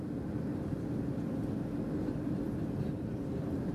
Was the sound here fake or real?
real